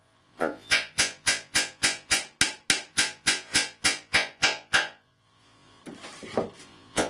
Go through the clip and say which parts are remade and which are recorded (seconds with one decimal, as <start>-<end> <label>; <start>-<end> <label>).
0.0-2.2 remade; 2.2-2.9 recorded; 2.9-5.8 remade; 5.8-6.6 recorded; 6.6-7.1 remade